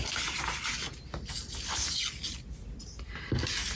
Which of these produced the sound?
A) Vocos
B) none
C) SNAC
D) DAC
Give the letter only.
B